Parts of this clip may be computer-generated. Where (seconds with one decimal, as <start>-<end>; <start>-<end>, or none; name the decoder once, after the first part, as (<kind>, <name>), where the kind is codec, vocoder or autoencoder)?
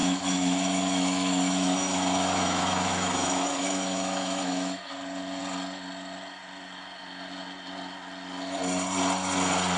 0.0-4.9 (autoencoder, DAC-VAE)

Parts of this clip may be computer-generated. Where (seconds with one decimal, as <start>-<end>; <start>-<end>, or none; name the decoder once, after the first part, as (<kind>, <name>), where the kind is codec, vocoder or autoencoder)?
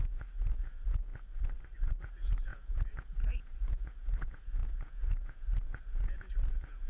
0.0-1.1 (vocoder, Vocos); 2.0-6.9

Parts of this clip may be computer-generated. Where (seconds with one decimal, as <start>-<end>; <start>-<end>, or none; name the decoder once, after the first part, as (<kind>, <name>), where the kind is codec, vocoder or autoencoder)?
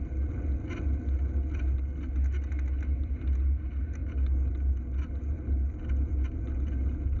none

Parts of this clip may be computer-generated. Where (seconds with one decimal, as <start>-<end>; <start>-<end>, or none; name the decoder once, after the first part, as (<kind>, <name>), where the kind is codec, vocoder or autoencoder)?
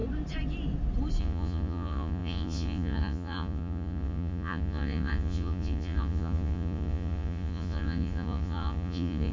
1.2-9.3 (vocoder, Vocos)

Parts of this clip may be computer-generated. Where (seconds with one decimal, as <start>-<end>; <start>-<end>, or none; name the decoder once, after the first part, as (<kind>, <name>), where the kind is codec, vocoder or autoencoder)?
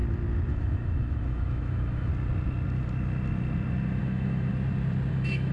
0.5-2.1 (autoencoder, DAC-VAE); 4.0-4.5; 5.1-5.5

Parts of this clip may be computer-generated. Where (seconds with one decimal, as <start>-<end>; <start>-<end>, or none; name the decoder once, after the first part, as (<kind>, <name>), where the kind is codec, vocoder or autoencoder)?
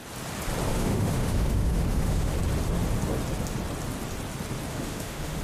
0.7-2.3 (autoencoder, DAC-VAE); 4.7-5.4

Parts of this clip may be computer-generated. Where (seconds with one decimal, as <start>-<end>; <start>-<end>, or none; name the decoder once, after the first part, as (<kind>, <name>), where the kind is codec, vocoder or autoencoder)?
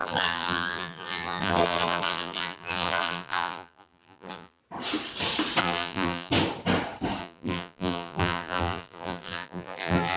0.0-4.6 (vocoder, BigVGAN v2); 5.6-6.3; 7.2-10.2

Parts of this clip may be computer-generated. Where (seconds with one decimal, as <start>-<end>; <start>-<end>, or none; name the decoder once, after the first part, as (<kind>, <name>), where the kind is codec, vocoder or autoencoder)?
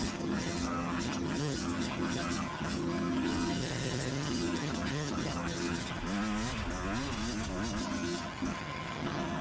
0.0-6.0 (vocoder, HiFi-GAN); 7.8-9.4